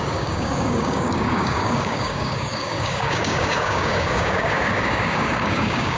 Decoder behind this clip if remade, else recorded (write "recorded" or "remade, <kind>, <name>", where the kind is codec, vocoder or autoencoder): remade, codec, DAC